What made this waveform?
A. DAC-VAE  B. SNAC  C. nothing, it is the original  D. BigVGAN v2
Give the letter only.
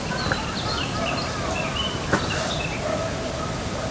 C